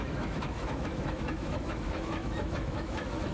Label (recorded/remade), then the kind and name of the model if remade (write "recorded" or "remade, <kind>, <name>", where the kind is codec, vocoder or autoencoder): remade, autoencoder, DAC-VAE